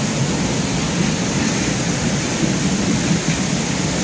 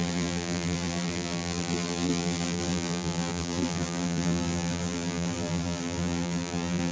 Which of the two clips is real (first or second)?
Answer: first